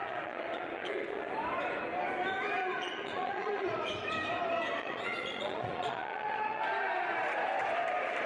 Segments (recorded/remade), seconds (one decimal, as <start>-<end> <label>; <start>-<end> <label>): 0.0-1.3 remade; 1.3-2.6 recorded; 2.6-3.8 remade; 3.8-4.8 recorded; 4.8-6.6 remade; 6.6-8.3 recorded